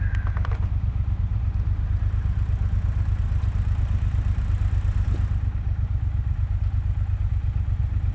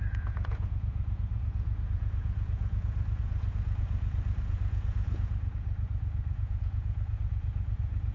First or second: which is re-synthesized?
second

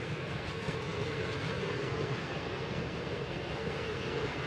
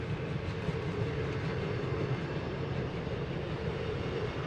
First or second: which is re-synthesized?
first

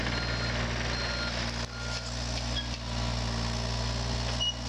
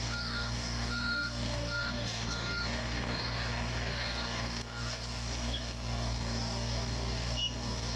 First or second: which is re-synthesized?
second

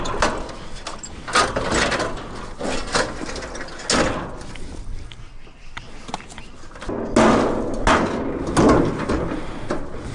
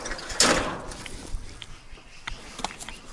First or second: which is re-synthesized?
second